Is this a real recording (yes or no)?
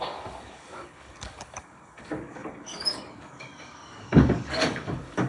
no